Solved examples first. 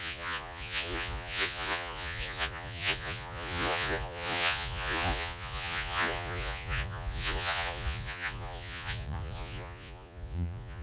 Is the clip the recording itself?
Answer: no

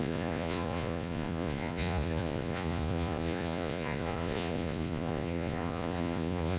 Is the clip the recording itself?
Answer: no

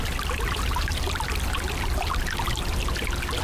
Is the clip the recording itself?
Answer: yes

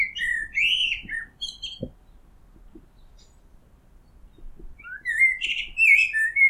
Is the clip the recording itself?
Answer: yes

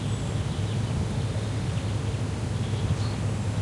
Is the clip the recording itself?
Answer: yes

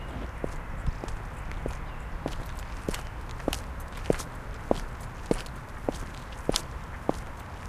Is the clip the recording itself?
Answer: yes